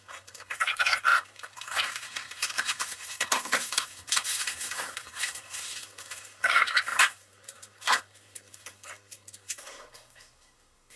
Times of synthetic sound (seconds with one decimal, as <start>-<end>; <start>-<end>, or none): 0.0-11.0